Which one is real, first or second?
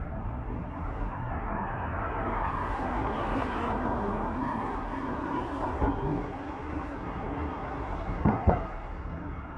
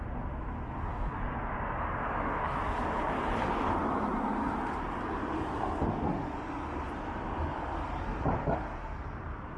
second